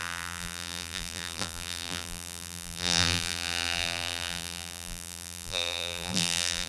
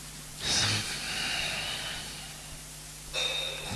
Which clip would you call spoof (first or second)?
first